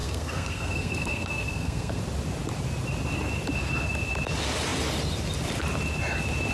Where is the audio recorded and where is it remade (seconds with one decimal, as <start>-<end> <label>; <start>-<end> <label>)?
0.0-2.0 remade; 2.0-6.5 recorded